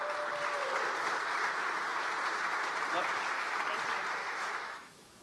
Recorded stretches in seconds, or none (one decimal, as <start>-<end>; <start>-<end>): 0.0-4.2